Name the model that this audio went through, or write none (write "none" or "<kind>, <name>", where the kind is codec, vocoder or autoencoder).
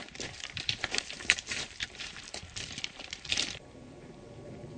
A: vocoder, BigVGAN v2